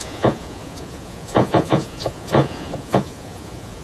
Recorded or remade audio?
remade